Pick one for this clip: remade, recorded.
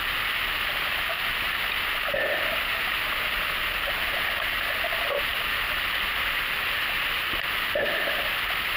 recorded